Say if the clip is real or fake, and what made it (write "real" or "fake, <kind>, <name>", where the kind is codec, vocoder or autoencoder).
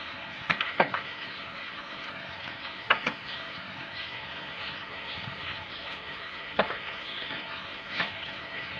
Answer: fake, codec, SNAC